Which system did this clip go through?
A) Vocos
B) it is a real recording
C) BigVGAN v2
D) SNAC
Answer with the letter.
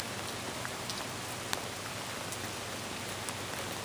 B